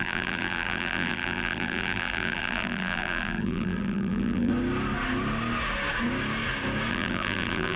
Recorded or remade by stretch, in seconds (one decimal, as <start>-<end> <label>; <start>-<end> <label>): 0.0-4.5 remade; 4.5-6.9 recorded; 6.9-7.8 remade